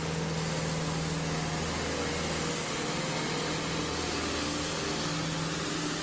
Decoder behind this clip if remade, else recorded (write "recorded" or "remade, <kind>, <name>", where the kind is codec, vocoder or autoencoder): recorded